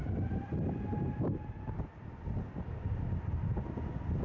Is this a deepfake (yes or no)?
no